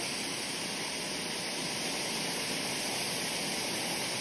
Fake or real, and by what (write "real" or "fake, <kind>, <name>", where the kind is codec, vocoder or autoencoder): real